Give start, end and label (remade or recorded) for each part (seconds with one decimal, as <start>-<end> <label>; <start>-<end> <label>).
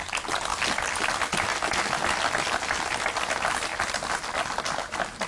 0.0-5.3 recorded